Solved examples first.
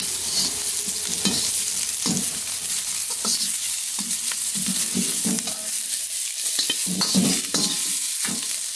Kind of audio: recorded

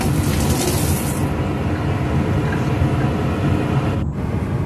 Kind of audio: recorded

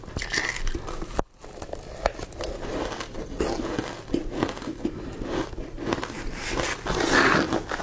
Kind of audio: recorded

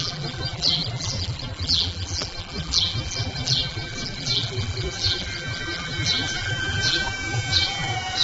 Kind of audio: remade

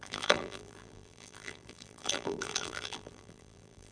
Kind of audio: remade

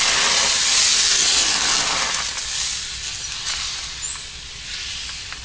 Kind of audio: recorded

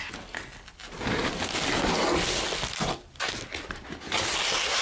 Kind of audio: recorded